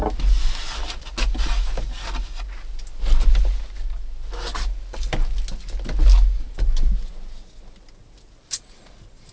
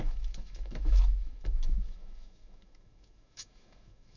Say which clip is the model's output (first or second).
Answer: second